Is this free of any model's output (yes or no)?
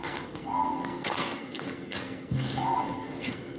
no